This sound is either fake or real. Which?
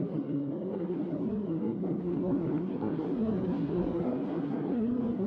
fake